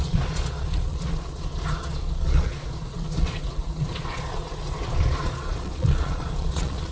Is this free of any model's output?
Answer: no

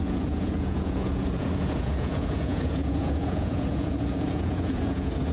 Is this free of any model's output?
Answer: no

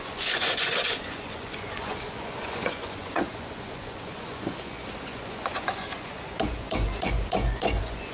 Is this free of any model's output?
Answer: no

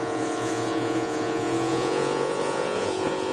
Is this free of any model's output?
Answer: no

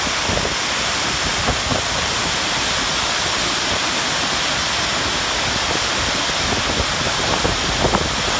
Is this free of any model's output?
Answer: yes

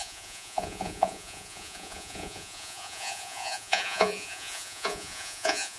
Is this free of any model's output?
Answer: no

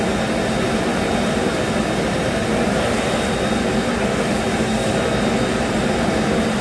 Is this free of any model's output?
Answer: yes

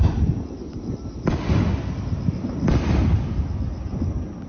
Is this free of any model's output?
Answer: yes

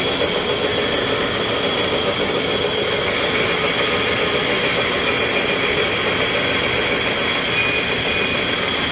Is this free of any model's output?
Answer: yes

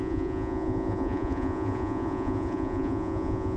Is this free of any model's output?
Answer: no